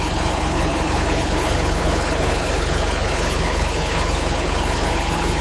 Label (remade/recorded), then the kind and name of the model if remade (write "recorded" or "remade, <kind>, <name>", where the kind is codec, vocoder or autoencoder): remade, codec, HILCodec